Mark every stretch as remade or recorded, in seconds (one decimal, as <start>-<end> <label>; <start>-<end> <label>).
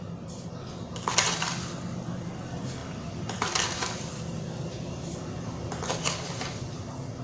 0.0-2.8 recorded; 2.8-7.2 remade